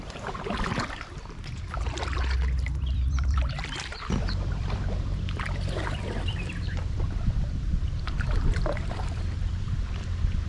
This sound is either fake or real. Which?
fake